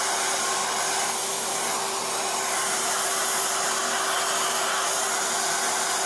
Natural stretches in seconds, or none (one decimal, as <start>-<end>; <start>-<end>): 0.0-6.1